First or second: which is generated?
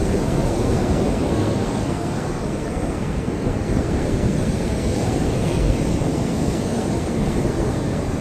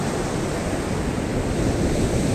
first